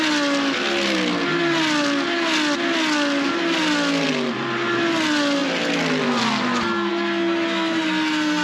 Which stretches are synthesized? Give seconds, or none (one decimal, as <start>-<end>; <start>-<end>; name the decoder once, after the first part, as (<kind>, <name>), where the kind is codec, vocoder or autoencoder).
none